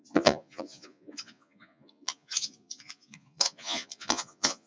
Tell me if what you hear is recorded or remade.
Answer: remade